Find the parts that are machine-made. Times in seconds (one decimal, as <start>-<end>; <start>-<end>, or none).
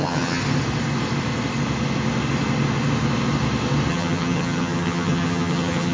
0.0-0.4; 3.9-5.9